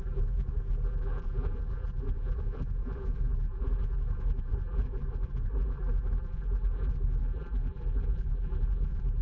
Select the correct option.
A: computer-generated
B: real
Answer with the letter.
A